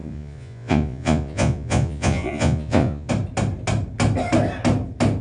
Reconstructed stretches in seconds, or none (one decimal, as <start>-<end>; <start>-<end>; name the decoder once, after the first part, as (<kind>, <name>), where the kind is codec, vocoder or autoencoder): 0.0-3.1 (vocoder, Vocos)